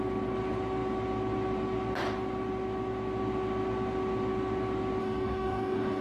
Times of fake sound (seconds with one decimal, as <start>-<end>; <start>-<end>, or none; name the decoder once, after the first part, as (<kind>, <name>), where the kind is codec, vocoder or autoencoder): 5.0-6.0 (codec, DAC)